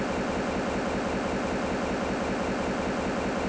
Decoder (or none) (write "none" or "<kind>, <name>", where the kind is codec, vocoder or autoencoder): none